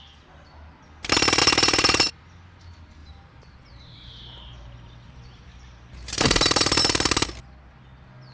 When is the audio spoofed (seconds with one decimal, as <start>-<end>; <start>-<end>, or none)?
1.4-2.2; 3.0-6.8